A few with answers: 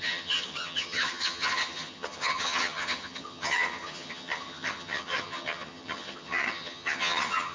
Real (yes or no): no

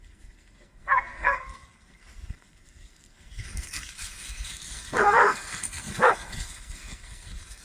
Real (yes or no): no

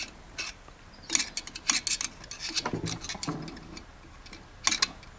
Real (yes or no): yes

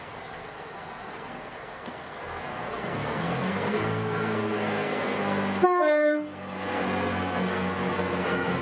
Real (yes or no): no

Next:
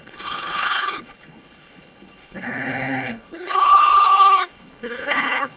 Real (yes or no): no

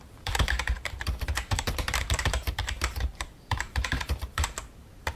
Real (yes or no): no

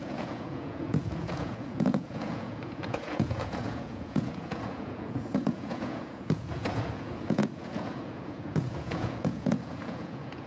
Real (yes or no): no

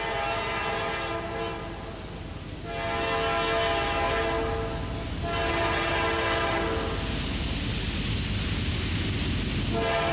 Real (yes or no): yes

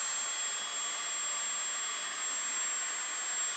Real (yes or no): yes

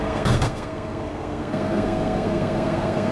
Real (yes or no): no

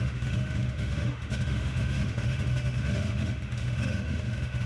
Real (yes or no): no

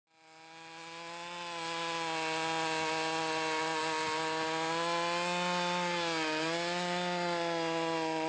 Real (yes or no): yes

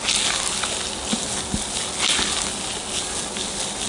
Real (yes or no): yes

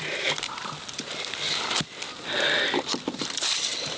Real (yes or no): yes